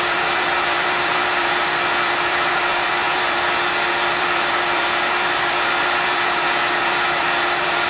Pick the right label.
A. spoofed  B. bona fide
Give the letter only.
A